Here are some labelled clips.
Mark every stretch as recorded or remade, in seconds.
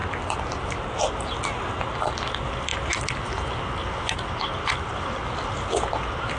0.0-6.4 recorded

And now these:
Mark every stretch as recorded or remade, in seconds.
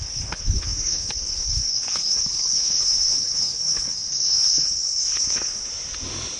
0.0-5.7 remade; 5.7-6.4 recorded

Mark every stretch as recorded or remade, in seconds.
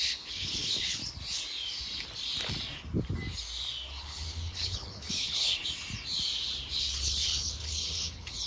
0.0-1.0 remade; 1.0-4.0 recorded; 4.0-5.6 remade; 5.6-6.7 recorded; 6.7-8.5 remade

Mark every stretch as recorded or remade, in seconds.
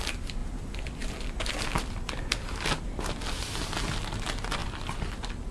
0.0-5.5 recorded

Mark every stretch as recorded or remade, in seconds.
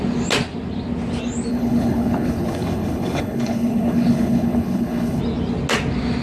0.0-1.5 recorded; 1.5-5.2 remade; 5.2-6.2 recorded